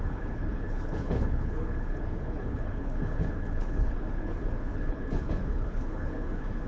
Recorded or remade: remade